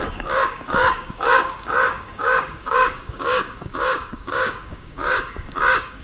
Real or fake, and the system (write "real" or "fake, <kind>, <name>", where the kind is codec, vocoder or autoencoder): fake, codec, DAC